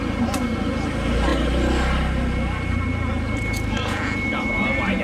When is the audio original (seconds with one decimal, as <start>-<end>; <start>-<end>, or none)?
0.0-5.0